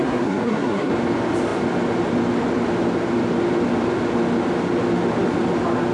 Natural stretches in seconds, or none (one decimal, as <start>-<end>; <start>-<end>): 0.9-5.9